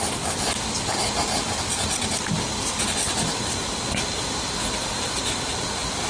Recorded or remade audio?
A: recorded